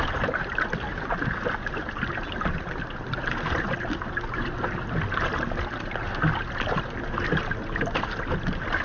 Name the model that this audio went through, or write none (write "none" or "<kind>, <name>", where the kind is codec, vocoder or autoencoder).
none